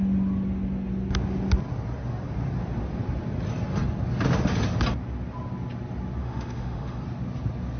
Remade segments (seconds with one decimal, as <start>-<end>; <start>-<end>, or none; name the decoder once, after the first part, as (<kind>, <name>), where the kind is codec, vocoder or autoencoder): 6.2-7.0 (autoencoder, DAC-VAE)